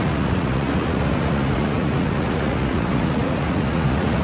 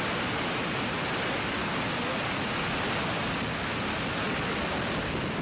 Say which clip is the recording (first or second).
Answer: second